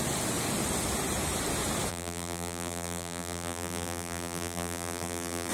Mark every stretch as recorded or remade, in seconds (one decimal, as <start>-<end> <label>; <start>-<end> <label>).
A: 0.0-1.9 recorded; 1.9-5.5 remade